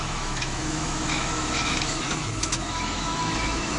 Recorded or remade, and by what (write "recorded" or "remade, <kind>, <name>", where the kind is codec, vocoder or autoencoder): remade, autoencoder, DAC-VAE